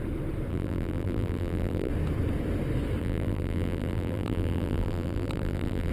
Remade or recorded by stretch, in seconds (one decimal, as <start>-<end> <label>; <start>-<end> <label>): 0.0-0.5 recorded; 0.5-1.9 remade; 1.9-3.0 recorded; 3.0-5.9 remade

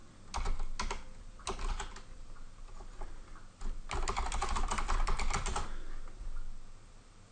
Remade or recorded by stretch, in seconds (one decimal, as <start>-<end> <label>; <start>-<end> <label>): 0.0-7.3 recorded

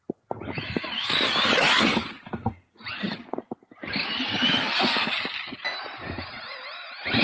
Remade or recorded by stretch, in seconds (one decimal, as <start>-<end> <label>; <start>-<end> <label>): 0.0-7.2 recorded